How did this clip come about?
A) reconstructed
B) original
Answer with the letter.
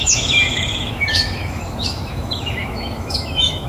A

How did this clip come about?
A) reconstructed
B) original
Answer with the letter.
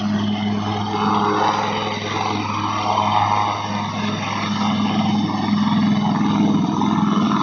B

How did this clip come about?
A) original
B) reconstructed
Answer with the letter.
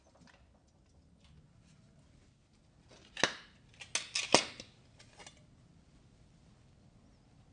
A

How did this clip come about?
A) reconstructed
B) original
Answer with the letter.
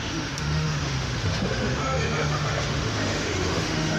A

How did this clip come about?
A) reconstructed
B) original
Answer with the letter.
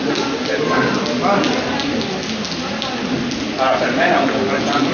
B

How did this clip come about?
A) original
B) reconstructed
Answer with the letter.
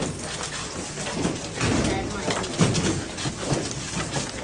A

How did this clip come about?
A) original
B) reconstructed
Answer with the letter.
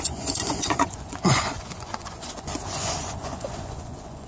B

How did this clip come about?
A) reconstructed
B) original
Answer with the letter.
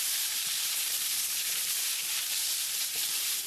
A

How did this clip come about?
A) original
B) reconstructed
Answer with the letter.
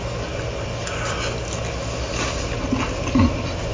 A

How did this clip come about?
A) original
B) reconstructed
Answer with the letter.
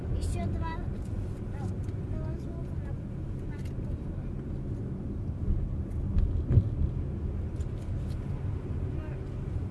A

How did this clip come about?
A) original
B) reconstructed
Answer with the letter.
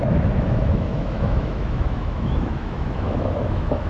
B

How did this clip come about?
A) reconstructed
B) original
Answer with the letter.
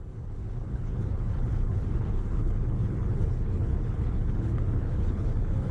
A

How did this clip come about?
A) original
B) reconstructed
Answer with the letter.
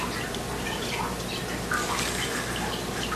A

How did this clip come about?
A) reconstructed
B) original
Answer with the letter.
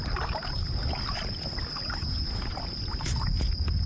B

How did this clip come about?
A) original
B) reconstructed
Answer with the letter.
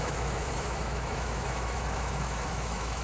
B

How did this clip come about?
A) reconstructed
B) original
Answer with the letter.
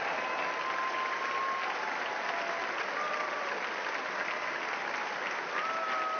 B